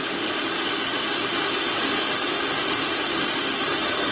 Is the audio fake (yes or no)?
no